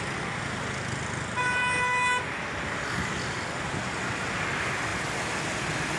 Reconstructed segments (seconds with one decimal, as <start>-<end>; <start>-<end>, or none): none